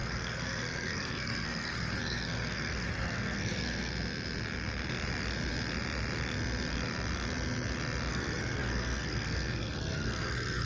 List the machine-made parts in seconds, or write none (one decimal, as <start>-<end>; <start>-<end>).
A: 0.0-3.9; 8.1-10.7

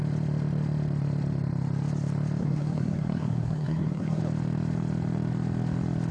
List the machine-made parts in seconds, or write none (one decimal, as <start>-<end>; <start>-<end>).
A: 2.4-4.2